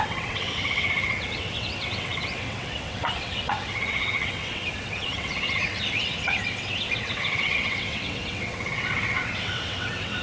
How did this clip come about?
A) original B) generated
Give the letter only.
B